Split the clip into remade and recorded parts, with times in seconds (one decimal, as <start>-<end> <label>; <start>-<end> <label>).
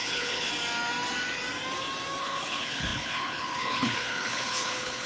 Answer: 0.0-0.5 remade; 0.5-2.2 recorded; 2.2-5.1 remade